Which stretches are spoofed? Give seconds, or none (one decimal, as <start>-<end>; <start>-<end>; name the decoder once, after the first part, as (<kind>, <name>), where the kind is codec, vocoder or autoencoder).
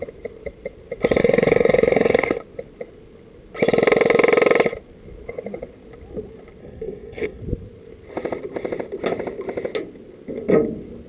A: 1.2-2.4 (codec, SNAC); 6.6-7.4